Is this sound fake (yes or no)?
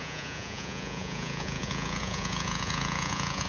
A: yes